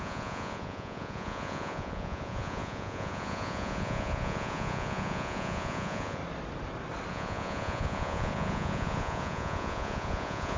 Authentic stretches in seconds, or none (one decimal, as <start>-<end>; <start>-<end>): 6.2-7.1